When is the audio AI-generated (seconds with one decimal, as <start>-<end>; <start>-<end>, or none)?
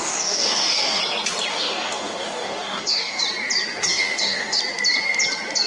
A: 0.0-1.0; 1.5-3.2; 3.9-4.6